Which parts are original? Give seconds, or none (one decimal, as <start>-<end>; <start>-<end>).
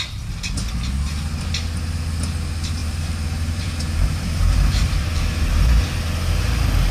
0.0-2.8; 5.7-6.9